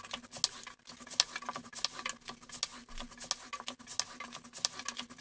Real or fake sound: real